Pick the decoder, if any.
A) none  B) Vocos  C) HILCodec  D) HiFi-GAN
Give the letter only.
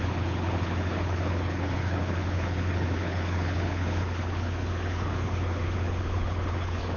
C